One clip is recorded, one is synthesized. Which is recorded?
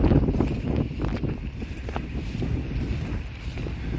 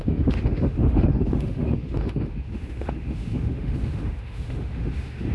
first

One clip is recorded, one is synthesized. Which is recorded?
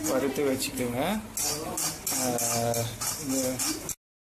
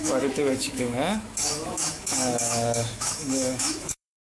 first